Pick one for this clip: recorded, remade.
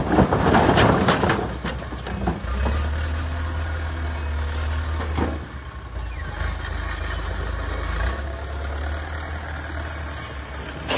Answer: recorded